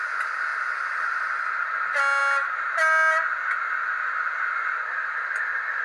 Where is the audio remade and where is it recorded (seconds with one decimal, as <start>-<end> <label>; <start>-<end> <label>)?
0.0-0.5 recorded; 0.5-1.4 remade; 1.4-5.8 recorded